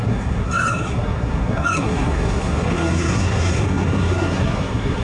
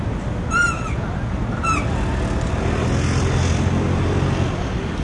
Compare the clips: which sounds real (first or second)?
second